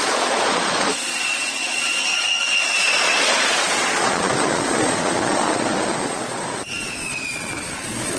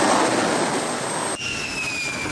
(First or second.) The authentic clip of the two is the second